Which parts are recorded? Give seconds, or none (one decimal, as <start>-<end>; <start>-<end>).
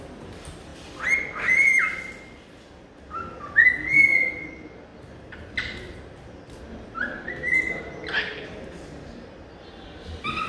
0.0-4.9; 6.6-10.5